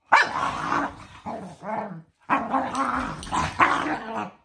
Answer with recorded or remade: recorded